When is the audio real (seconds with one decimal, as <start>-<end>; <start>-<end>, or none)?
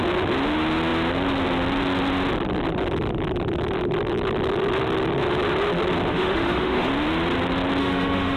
0.0-6.1; 6.9-7.8